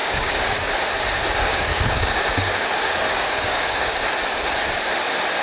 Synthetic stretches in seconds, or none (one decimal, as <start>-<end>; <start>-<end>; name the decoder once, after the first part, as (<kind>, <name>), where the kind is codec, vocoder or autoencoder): 0.0-0.7 (codec, DAC); 1.5-3.9

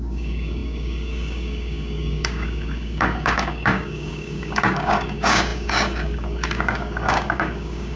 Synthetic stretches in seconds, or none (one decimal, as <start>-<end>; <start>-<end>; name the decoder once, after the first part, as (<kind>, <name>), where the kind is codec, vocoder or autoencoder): 0.0-8.0 (codec, DAC)